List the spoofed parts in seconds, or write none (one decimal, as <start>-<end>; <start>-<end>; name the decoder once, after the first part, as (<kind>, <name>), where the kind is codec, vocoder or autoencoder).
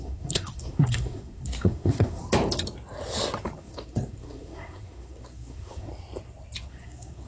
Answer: 0.0-2.2 (codec, SNAC); 3.6-5.9; 6.7-7.3